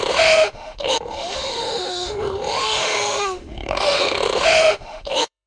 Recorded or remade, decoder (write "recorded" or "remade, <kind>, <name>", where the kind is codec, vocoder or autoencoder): remade, autoencoder, DAC-VAE